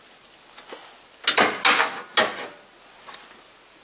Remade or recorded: recorded